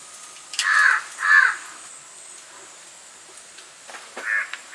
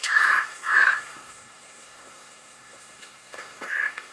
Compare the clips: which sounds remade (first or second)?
second